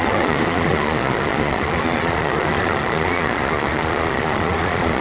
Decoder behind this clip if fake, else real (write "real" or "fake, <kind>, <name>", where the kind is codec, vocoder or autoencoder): fake, vocoder, Vocos